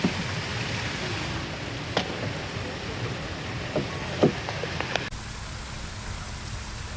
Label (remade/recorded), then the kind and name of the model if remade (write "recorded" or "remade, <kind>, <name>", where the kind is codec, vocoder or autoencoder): recorded